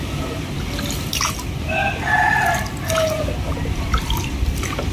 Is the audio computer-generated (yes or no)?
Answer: no